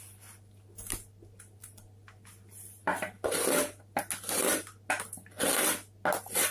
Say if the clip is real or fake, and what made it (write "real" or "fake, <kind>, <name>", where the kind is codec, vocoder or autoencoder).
real